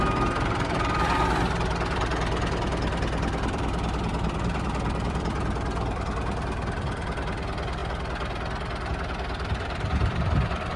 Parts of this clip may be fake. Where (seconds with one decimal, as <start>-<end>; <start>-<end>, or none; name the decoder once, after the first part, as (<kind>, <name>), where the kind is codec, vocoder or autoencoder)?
0.0-7.8 (vocoder, BigVGAN v2); 8.9-10.8